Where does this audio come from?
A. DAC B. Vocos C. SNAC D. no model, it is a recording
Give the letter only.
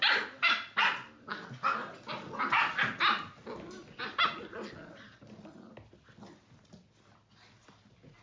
D